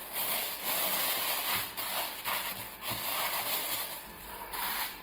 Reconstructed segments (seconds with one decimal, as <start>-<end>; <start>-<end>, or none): none